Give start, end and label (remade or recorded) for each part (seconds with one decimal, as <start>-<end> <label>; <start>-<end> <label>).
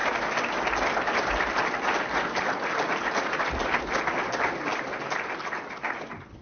0.0-6.4 recorded